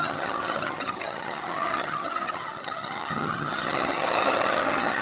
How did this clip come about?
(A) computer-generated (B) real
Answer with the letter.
A